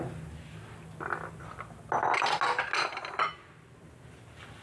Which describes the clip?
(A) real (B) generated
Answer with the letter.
A